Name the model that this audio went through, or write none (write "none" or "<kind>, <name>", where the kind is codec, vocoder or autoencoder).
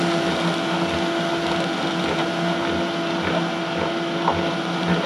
none